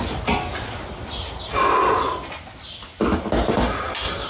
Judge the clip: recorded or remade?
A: recorded